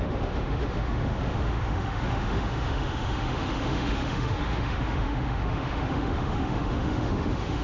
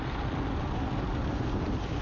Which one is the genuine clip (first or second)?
second